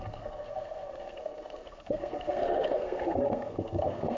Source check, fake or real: fake